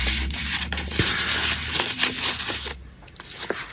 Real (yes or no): yes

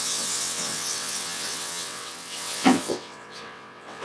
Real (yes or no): no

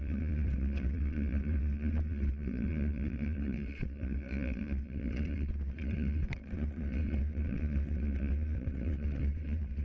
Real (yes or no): no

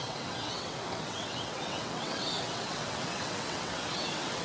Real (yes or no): no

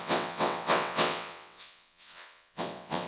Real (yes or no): no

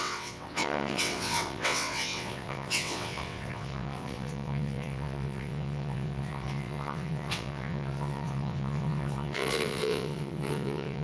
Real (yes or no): no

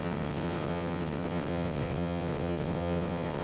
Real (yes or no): no